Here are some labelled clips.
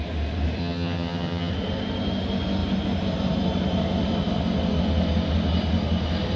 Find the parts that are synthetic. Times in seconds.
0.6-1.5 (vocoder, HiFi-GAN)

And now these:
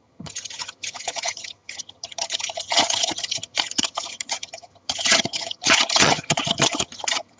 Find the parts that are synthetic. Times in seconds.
0.0-7.4 (vocoder, HiFi-GAN)

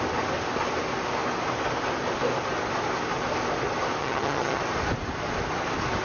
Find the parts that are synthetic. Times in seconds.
4.0-4.6 (vocoder, HiFi-GAN)

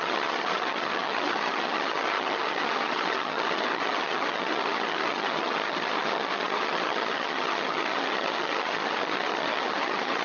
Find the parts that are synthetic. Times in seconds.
0.0-10.2 (vocoder, HiFi-GAN)

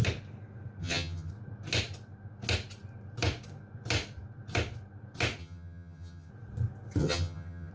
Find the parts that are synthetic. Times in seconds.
0.8-1.3 (vocoder, HiFi-GAN); 5.4-6.3; 7.0-7.7

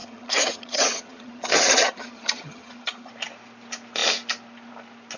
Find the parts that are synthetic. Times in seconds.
0.0-3.1 (vocoder, HiFi-GAN)

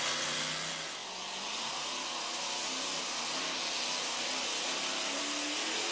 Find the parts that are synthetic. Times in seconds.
none

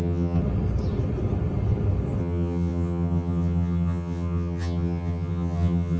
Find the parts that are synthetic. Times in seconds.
0.0-0.4 (vocoder, HiFi-GAN); 2.2-6.0